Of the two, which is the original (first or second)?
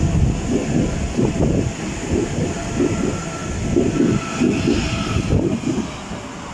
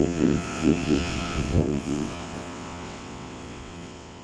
first